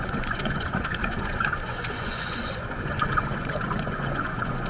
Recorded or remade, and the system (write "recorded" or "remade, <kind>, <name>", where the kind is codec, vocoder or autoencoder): remade, vocoder, Vocos